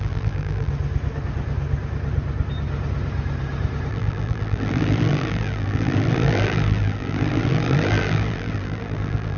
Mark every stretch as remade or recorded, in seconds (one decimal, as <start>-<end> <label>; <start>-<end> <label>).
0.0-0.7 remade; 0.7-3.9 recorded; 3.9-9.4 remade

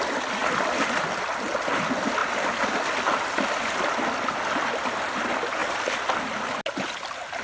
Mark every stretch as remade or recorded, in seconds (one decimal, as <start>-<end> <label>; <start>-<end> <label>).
0.0-2.2 recorded; 2.2-3.4 remade; 3.4-7.4 recorded

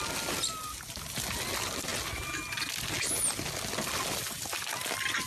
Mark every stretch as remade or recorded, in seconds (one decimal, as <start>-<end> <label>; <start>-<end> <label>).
0.0-5.3 recorded

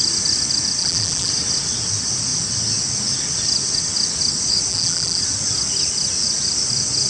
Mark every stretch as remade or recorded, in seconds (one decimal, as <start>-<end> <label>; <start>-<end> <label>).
0.0-0.8 recorded; 0.8-1.3 remade; 1.3-4.7 recorded; 4.7-5.2 remade; 5.2-7.1 recorded